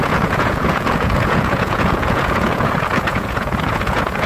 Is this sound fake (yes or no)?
yes